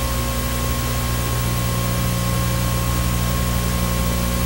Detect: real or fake real